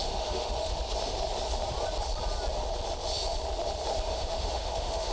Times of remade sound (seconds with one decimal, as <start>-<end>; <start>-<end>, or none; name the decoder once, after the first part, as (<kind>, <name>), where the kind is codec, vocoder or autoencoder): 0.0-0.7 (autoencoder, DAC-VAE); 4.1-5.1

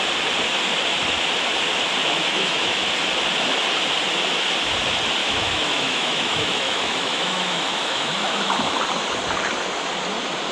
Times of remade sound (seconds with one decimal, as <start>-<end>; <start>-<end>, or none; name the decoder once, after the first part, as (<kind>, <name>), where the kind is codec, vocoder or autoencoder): 2.0-2.9 (autoencoder, DAC-VAE); 5.2-8.8

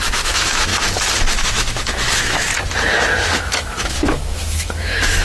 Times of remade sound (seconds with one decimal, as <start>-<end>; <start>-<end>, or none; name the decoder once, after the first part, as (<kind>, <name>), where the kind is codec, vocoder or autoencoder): 0.0-0.7 (autoencoder, DAC-VAE); 1.4-2.5; 3.3-5.2

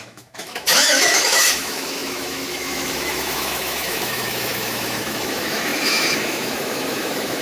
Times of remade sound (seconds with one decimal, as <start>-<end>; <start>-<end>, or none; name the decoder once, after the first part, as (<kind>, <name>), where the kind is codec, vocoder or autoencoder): 0.0-7.4 (autoencoder, DAC-VAE)

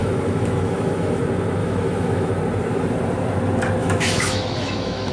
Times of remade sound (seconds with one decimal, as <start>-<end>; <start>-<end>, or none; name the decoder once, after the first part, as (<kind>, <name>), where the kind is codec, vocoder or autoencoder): 0.0-1.2 (autoencoder, DAC-VAE); 1.6-2.3; 3.8-5.1

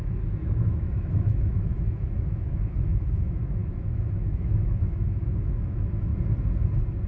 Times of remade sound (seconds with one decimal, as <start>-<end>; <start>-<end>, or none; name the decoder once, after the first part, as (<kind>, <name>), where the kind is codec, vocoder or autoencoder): 0.0-6.1 (autoencoder, DAC-VAE)

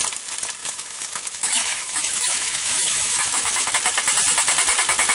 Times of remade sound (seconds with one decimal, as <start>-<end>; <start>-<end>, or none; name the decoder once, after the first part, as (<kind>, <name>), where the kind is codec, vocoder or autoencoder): 0.6-3.7 (autoencoder, DAC-VAE)

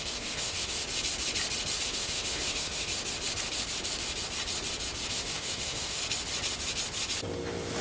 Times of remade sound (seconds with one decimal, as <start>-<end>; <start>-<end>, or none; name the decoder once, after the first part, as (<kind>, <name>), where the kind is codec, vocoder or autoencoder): 0.0-0.8 (autoencoder, DAC-VAE); 1.8-2.9; 5.1-6.0